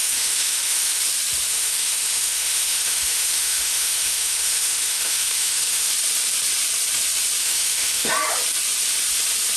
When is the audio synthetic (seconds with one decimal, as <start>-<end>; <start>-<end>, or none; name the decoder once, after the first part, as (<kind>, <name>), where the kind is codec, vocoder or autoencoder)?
0.0-1.0 (autoencoder, DAC-VAE); 1.5-5.9; 7.4-8.1